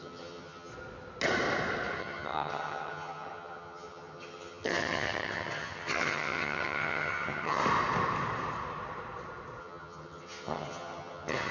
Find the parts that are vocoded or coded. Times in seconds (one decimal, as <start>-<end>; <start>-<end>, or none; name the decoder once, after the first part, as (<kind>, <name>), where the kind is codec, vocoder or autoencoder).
0.0-0.7 (vocoder, HiFi-GAN); 2.0-7.6; 9.6-11.5